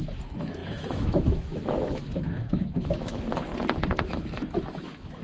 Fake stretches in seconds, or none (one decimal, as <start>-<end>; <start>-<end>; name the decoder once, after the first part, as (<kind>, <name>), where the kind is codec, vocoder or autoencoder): 0.0-3.5 (autoencoder, DAC-VAE); 4.1-5.2

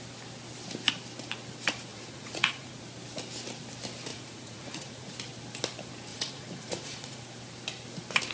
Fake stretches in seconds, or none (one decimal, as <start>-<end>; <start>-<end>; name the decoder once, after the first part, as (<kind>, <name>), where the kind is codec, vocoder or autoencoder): 1.9-2.8 (vocoder, Vocos); 4.1-5.1; 6.1-7.2